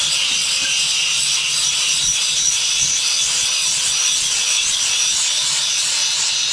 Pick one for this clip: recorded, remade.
remade